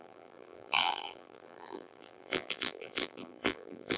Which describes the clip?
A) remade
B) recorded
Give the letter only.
A